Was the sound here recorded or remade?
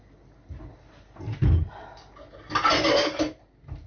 recorded